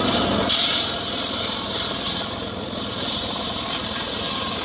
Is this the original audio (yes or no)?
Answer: yes